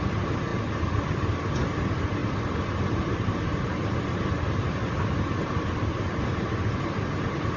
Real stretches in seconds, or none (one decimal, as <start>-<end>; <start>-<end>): 0.0-2.2; 6.8-7.6